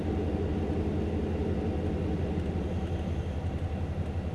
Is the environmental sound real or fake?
real